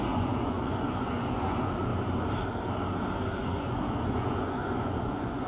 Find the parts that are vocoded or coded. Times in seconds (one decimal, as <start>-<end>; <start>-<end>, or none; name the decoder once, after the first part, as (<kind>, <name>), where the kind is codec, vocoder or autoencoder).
0.0-1.9 (vocoder, Vocos); 3.3-5.5